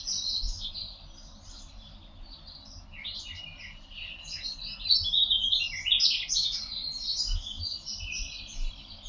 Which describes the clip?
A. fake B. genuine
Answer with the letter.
B